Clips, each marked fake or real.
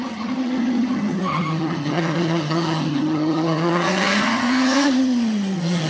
fake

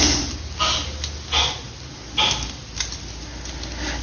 real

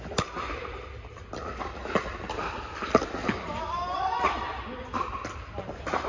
real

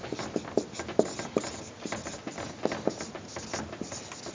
real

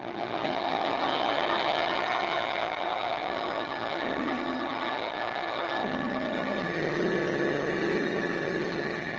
fake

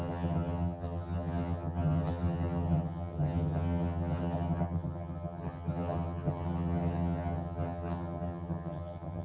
fake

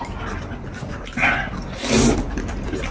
real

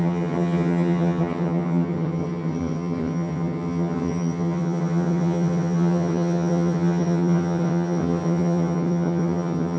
fake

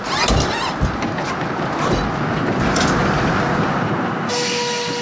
real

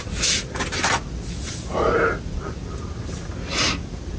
real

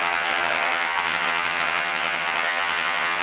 fake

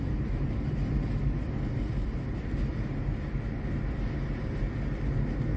real